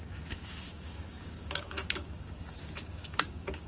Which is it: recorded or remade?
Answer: remade